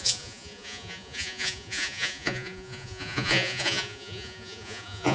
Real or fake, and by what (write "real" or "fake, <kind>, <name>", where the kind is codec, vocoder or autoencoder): fake, vocoder, Vocos